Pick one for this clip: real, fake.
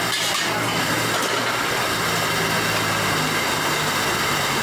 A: real